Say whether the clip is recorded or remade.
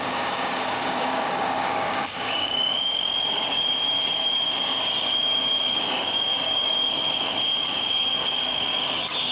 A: remade